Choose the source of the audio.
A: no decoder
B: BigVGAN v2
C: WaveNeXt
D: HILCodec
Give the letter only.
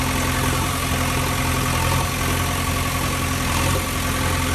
A